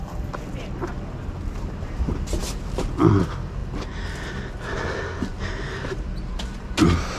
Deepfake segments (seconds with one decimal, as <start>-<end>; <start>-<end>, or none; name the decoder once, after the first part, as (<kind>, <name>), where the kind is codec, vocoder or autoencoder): none